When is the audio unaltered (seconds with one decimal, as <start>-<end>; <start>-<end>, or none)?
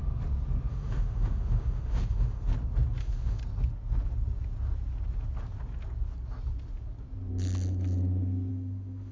0.0-0.7; 2.5-3.0; 3.4-8.5